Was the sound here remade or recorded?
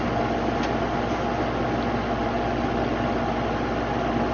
recorded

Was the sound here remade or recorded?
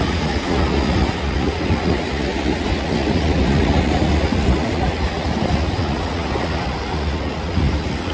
remade